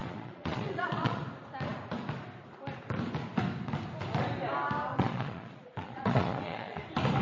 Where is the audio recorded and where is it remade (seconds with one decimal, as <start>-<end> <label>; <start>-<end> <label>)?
0.0-1.2 remade; 1.2-4.9 recorded; 4.9-6.8 remade; 6.8-7.2 recorded